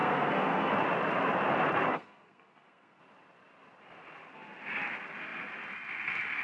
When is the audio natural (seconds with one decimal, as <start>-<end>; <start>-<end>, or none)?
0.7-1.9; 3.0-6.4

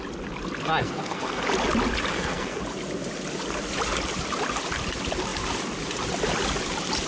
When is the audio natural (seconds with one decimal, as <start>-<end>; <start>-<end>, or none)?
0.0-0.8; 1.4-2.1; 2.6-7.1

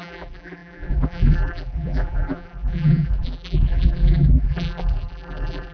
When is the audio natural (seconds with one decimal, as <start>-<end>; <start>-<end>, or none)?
none